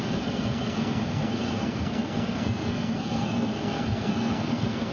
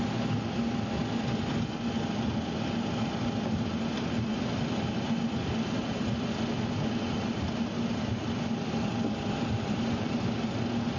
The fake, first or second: first